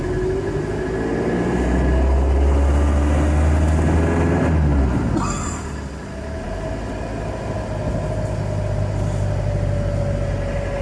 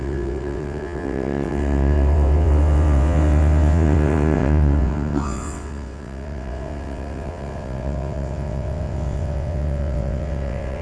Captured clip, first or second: first